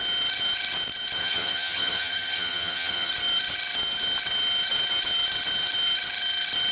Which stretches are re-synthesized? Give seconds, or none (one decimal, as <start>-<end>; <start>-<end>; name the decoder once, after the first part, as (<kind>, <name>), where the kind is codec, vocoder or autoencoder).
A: 1.2-3.1 (vocoder, HiFi-GAN)